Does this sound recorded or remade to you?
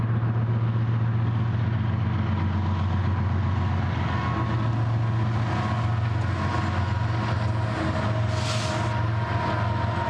recorded